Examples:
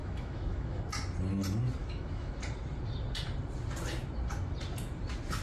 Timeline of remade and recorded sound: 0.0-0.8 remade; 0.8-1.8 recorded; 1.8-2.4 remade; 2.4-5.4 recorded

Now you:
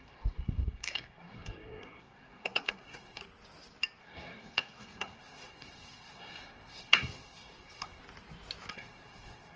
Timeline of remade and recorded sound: 0.0-3.2 remade; 3.2-4.0 recorded; 4.0-8.0 remade; 8.0-8.7 recorded; 8.7-9.6 remade

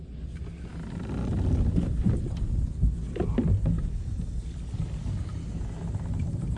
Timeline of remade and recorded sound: 0.0-6.6 recorded

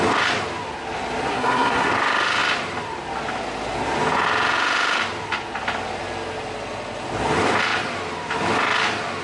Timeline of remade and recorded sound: 0.0-1.3 recorded; 1.3-1.9 remade; 1.9-9.2 recorded